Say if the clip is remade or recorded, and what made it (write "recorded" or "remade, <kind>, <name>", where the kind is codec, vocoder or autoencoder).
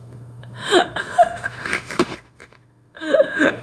remade, autoencoder, DAC-VAE